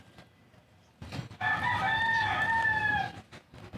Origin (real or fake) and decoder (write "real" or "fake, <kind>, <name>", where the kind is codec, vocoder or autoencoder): real